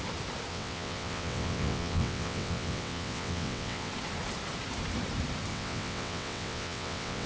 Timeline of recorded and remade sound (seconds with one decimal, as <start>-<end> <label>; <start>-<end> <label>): 0.0-0.5 recorded; 0.5-3.9 remade; 3.9-5.5 recorded; 5.5-7.3 remade